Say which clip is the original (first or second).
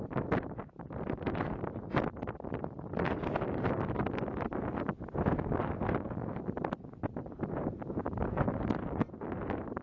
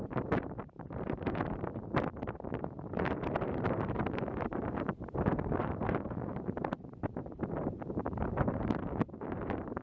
first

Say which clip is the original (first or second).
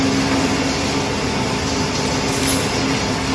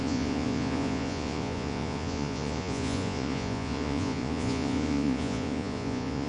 first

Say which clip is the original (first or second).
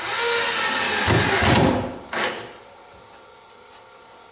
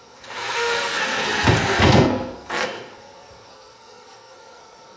first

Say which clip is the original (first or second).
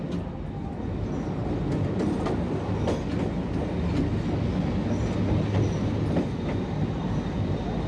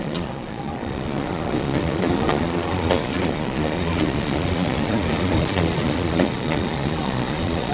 first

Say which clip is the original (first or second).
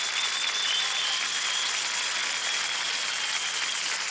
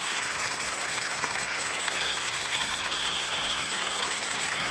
first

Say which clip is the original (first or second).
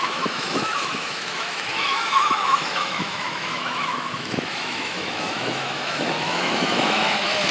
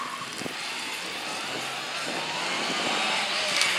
second